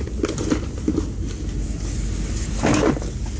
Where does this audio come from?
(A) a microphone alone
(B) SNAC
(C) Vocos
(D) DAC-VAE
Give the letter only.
A